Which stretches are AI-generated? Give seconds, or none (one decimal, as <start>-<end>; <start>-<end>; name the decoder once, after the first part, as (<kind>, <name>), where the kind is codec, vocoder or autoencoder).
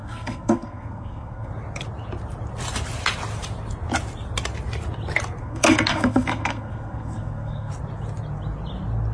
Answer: 0.0-1.5 (codec, SNAC); 5.4-7.7